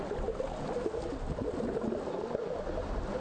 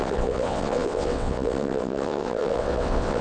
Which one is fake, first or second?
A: second